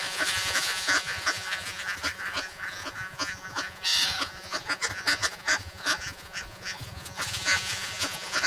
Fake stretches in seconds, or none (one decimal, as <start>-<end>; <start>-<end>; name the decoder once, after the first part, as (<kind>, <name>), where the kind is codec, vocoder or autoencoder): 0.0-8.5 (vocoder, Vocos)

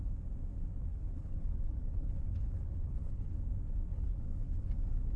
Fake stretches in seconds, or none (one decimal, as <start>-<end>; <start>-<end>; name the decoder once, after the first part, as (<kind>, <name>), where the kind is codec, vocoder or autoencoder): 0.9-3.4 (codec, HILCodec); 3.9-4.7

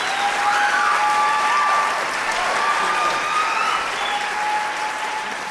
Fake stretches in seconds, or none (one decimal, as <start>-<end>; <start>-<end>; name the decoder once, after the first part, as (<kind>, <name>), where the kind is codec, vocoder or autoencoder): none